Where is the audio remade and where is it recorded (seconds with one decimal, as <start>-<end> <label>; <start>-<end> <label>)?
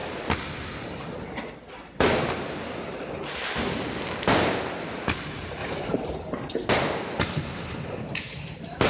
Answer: 0.0-8.9 recorded